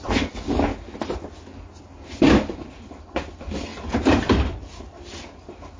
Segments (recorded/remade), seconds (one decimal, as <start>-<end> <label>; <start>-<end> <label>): 0.0-0.7 remade; 0.7-1.8 recorded; 1.8-5.8 remade